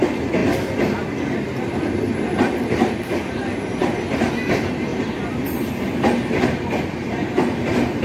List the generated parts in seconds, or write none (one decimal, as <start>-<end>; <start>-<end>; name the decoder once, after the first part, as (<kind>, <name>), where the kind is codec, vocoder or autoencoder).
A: 3.8-4.3 (vocoder, BigVGAN v2)